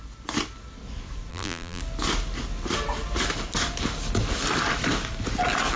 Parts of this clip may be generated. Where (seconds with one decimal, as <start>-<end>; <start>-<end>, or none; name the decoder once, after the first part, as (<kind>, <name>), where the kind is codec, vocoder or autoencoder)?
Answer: 1.3-1.8 (vocoder, BigVGAN v2)